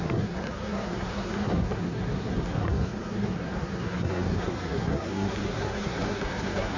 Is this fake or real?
fake